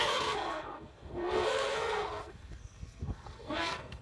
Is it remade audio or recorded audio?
remade